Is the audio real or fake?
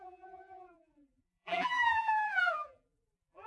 fake